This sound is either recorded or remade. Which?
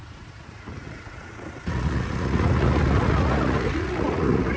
remade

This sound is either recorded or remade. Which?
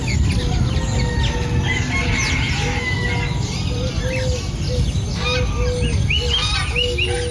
recorded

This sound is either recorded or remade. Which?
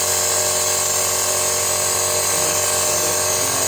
recorded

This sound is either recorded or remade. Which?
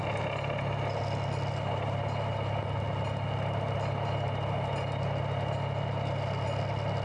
recorded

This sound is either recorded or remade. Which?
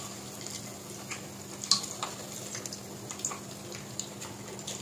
recorded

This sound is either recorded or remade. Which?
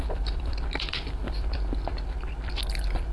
remade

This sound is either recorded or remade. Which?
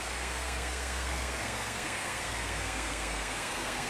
remade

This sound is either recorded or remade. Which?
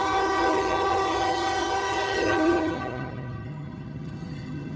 remade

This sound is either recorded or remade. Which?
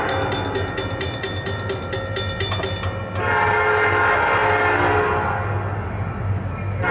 recorded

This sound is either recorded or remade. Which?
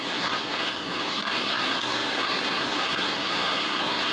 remade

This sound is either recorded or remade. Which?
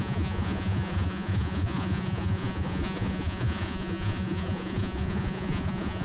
remade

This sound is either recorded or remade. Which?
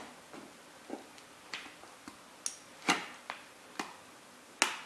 recorded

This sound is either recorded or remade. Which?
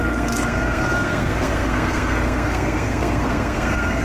remade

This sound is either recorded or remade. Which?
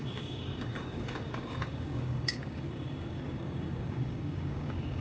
remade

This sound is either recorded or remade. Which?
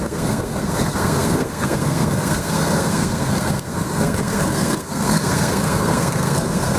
remade